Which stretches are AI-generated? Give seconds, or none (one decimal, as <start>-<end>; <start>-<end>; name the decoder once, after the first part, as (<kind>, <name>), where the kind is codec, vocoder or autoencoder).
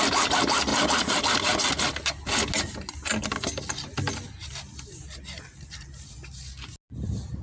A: none